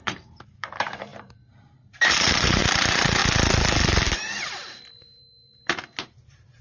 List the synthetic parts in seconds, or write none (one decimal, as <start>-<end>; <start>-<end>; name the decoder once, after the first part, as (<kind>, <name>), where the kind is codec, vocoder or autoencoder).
0.0-3.2 (vocoder, BigVGAN v2); 6.0-6.6